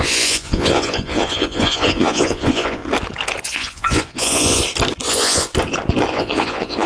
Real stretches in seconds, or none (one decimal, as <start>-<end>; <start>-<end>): 2.8-3.4; 4.6-5.1; 5.5-6.1

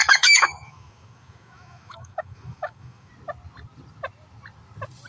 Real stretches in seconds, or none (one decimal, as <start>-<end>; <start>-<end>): 3.1-5.1

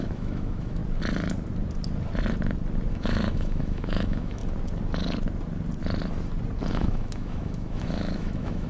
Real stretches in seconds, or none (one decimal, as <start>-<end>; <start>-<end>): 0.8-2.9; 4.4-6.7

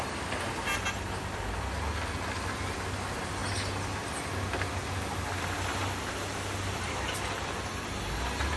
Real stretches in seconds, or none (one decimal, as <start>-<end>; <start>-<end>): 0.0-8.6